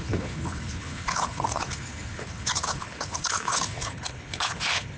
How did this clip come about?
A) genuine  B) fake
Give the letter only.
B